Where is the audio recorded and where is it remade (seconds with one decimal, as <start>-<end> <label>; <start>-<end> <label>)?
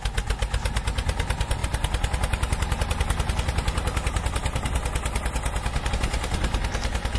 0.0-7.2 recorded